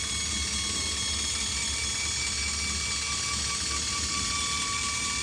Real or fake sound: real